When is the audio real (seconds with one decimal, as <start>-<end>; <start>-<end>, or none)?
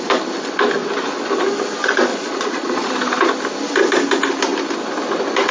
0.0-2.1; 2.9-5.5